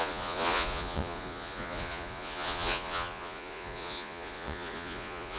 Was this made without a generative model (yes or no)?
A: no